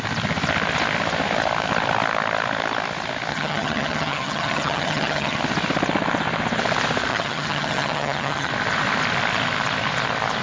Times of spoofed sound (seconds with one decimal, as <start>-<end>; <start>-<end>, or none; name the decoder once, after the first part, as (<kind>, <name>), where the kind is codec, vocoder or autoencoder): 3.3-5.4 (vocoder, HiFi-GAN); 7.1-8.5